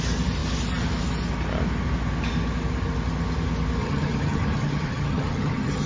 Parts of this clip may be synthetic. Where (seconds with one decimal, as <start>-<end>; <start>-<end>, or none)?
3.8-5.9